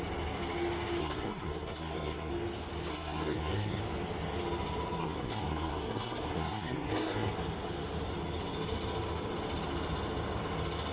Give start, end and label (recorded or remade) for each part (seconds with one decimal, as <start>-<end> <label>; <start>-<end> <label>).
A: 0.0-1.0 recorded; 1.0-2.3 remade; 2.3-2.9 recorded; 2.9-3.8 remade; 3.8-5.0 recorded; 5.0-7.3 remade; 7.3-10.9 recorded